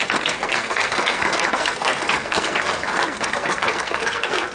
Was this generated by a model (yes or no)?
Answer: yes